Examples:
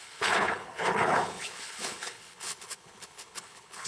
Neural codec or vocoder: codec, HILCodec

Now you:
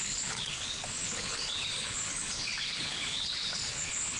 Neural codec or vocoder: codec, HILCodec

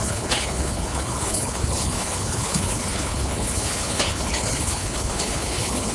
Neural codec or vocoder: codec, HILCodec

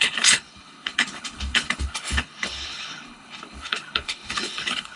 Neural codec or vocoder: codec, HILCodec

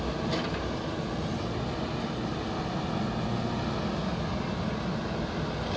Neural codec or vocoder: none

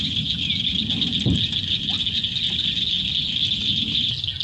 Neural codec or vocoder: none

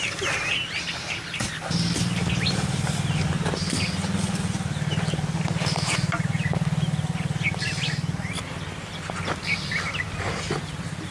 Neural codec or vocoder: none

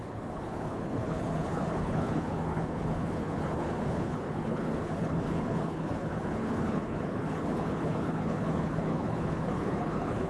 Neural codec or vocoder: codec, HILCodec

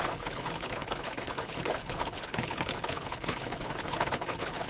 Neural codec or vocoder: codec, HILCodec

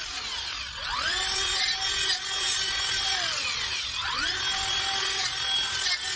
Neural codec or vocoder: none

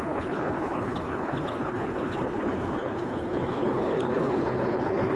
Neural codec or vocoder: codec, HILCodec